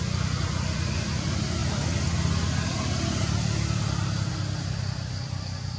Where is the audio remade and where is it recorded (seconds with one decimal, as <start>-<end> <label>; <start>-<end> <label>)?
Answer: 0.0-5.8 recorded